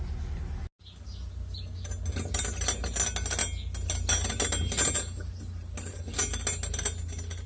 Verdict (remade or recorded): recorded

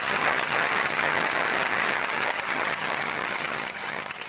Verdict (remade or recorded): remade